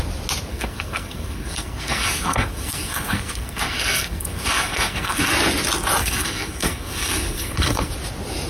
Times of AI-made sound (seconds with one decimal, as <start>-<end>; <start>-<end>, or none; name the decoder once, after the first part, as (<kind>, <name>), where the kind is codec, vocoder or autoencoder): 0.5-5.3 (codec, SNAC); 6.0-7.9